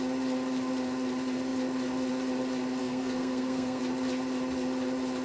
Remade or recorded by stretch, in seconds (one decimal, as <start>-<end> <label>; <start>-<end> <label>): 0.0-2.8 recorded; 2.8-3.8 remade; 3.8-5.2 recorded